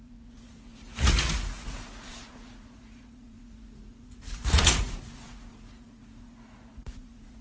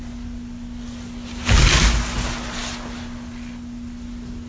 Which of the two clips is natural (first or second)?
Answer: second